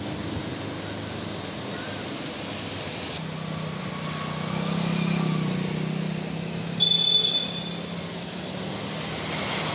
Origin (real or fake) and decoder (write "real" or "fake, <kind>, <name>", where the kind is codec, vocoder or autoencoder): real